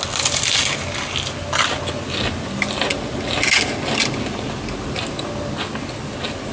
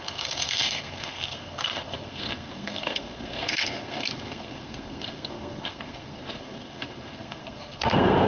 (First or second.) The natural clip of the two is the first